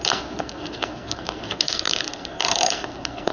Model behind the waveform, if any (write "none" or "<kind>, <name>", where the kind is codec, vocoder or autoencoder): codec, SNAC